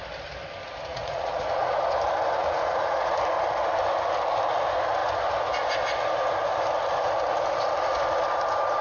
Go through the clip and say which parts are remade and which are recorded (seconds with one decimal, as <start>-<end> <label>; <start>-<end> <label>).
0.0-0.9 recorded; 0.9-1.8 remade; 1.8-2.4 recorded; 2.4-3.1 remade; 3.1-8.8 recorded